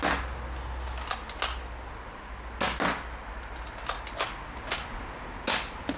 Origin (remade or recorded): recorded